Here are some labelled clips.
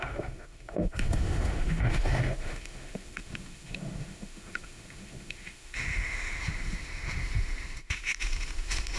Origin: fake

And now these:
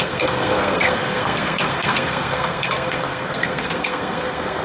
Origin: fake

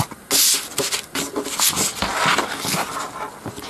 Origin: real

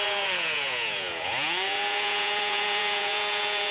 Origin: fake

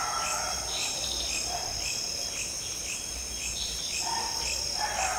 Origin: real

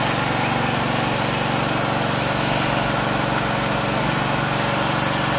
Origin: real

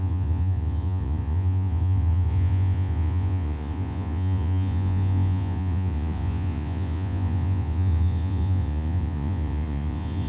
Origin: fake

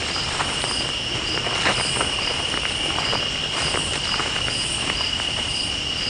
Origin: real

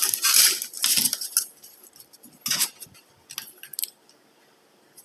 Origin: real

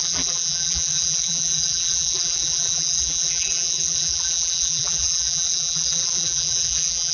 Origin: fake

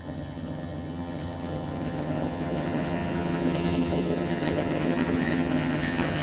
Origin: fake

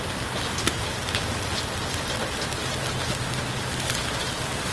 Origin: real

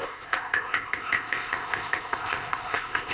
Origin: fake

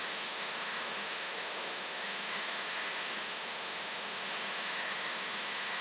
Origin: fake